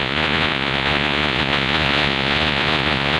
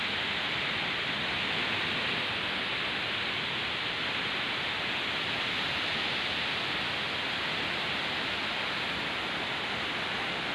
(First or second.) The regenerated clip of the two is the first